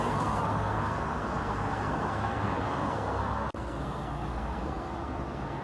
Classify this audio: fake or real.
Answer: fake